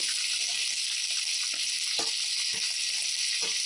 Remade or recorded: recorded